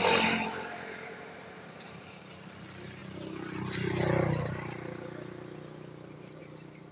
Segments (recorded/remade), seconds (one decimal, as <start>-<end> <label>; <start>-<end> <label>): 0.0-2.2 remade; 2.2-6.9 recorded